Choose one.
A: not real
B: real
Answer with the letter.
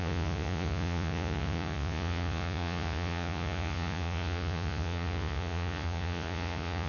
A